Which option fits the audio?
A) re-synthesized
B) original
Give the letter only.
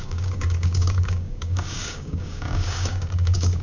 A